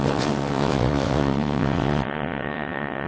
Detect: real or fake fake